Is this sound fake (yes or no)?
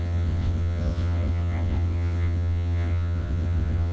yes